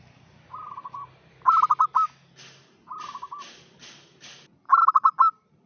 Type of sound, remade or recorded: recorded